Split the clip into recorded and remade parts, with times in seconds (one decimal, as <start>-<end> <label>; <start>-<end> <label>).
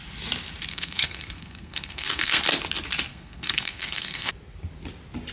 0.0-0.7 recorded; 0.7-2.4 remade; 2.4-3.1 recorded; 3.1-4.3 remade; 4.3-5.3 recorded